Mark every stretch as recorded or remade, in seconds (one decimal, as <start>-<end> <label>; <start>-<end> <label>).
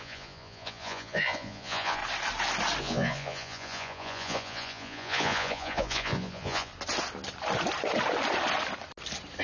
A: 0.0-2.0 remade; 2.0-2.8 recorded; 2.8-6.7 remade; 6.7-9.4 recorded